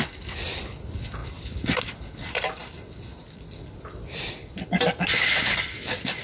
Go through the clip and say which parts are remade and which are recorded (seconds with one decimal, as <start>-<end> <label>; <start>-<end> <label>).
0.0-6.2 recorded